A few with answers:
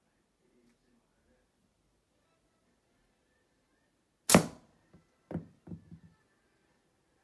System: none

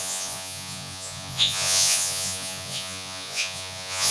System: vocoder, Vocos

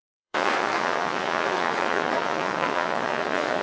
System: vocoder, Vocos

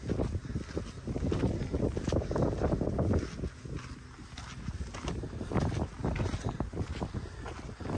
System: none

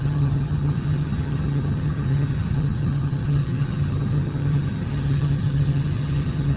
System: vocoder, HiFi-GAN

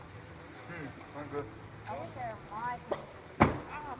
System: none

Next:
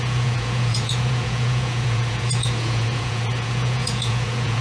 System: vocoder, Vocos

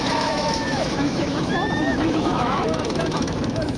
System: autoencoder, DAC-VAE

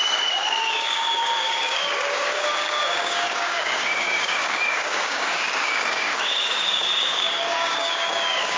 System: codec, DAC